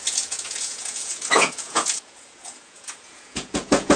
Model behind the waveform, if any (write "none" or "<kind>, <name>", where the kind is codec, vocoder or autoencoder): vocoder, Vocos